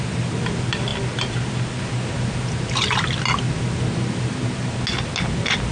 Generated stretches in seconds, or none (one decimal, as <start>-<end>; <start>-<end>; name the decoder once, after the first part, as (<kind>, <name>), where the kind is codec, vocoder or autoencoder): none